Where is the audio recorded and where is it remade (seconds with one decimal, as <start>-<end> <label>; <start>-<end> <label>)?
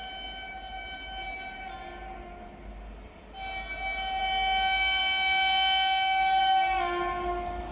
0.0-7.7 recorded